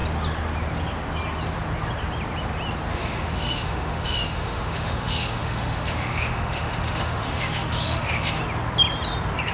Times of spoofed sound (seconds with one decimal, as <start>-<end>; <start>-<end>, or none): 2.9-8.4